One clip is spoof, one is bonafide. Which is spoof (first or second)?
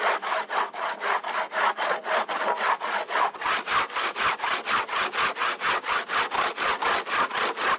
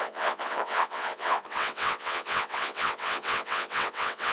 second